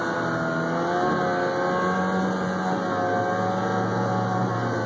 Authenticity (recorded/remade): recorded